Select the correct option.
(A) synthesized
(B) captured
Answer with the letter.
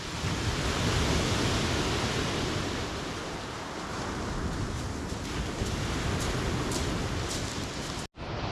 B